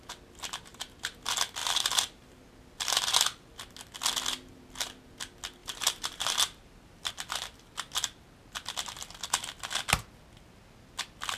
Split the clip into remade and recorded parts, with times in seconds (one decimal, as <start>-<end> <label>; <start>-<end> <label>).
0.0-0.7 recorded; 0.7-1.2 remade; 1.2-1.6 recorded; 1.6-2.5 remade; 2.5-5.6 recorded; 5.6-7.1 remade; 7.1-11.4 recorded